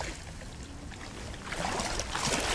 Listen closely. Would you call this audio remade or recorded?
recorded